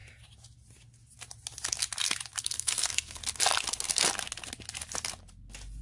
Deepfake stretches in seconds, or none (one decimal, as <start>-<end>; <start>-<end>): 2.4-3.2